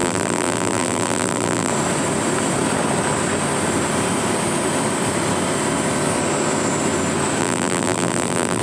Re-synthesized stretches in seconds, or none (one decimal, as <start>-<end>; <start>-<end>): 0.0-1.7; 7.4-8.6